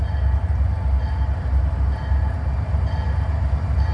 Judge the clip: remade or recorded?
recorded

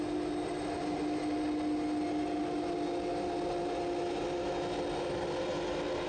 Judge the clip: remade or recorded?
recorded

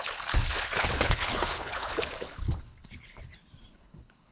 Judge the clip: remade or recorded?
remade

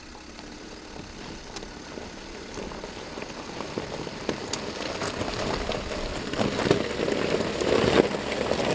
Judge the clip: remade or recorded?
recorded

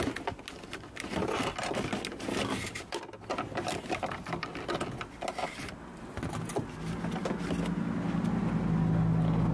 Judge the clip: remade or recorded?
recorded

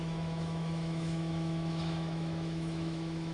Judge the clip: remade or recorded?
remade